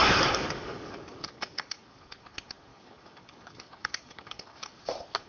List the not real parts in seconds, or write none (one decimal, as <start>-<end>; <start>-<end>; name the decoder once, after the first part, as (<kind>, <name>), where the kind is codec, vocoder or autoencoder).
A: 0.0-2.0 (codec, DAC); 2.7-4.8